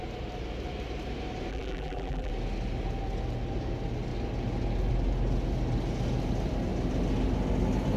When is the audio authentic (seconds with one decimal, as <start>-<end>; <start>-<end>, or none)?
0.0-1.5; 2.3-8.0